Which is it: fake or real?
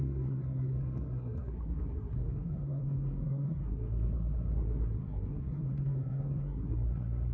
fake